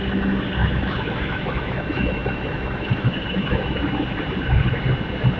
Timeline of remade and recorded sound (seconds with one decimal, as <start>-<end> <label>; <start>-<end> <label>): 0.0-0.6 recorded; 0.6-3.8 remade; 3.8-5.4 recorded